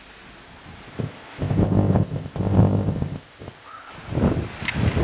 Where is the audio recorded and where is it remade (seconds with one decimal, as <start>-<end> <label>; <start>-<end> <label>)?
0.0-0.9 recorded; 0.9-3.9 remade; 3.9-5.0 recorded